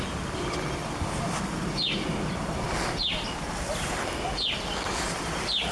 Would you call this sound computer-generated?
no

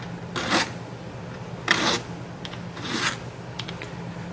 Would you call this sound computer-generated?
no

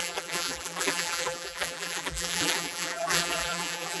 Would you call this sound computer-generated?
yes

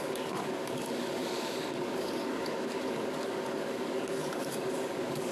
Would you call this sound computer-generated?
yes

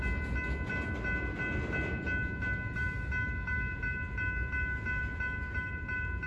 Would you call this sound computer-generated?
no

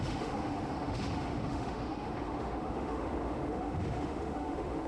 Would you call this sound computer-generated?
yes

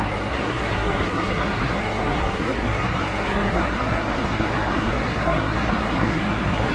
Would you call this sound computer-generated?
yes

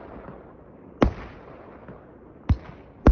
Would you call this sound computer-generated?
no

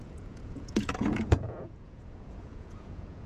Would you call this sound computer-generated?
yes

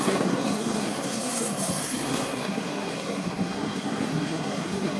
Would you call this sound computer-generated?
yes